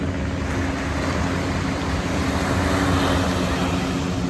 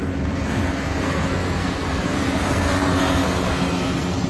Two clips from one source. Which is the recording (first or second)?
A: first